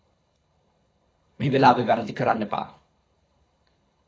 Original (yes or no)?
no